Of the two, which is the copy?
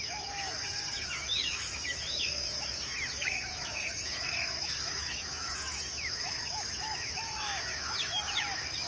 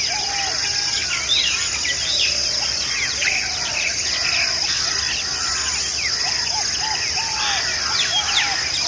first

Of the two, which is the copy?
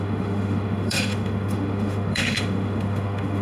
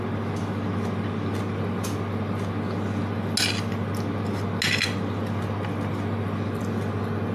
first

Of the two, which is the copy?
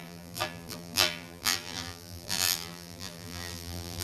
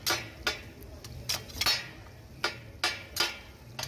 first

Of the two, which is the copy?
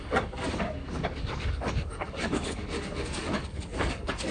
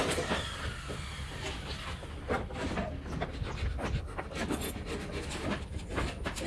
first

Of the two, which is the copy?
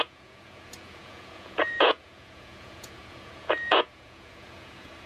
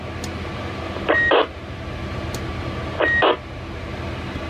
first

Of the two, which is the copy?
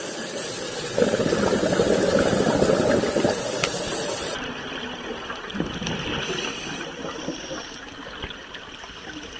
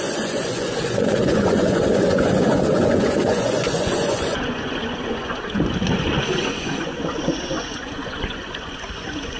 second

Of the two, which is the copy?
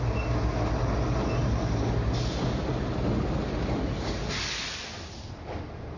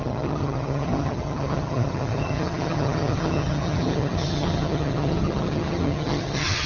second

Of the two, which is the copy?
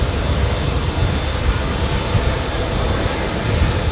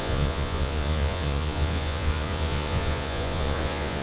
second